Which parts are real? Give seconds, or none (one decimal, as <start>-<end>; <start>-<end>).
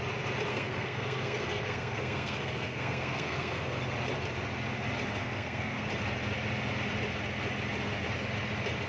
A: 0.0-0.5; 3.8-5.2; 5.9-8.9